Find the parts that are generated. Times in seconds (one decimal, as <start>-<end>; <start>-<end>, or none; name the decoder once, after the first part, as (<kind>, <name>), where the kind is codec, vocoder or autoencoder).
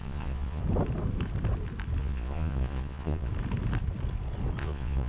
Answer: 0.0-0.6 (vocoder, Vocos); 2.0-3.3; 4.6-5.1